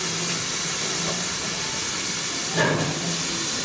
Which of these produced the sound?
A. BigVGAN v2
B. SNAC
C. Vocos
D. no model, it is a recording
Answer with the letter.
D